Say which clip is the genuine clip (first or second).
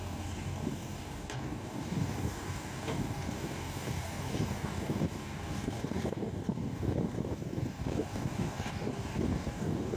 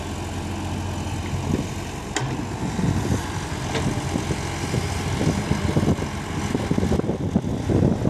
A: second